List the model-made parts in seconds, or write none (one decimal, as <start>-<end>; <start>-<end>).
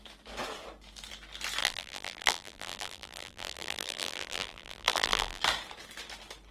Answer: 1.6-5.4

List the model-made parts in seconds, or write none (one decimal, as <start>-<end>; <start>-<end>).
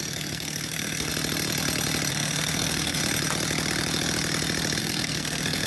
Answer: 0.0-1.1; 2.1-3.0; 4.8-5.7